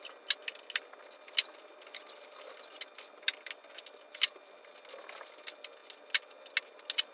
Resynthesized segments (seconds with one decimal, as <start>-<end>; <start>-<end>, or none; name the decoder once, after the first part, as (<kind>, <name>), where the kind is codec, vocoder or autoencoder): none